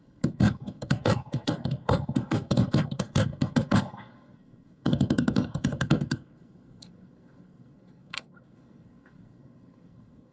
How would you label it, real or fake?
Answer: fake